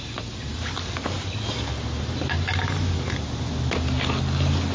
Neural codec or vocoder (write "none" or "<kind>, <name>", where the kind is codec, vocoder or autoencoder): none